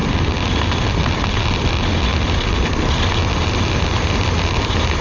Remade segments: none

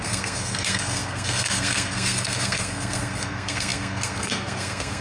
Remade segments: 0.0-5.0

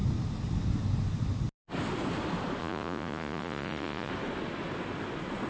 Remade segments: 2.6-4.1

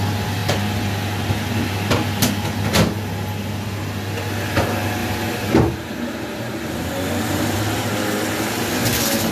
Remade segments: 5.0-7.6

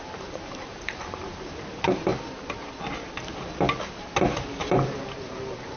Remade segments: 0.0-2.1; 4.0-5.8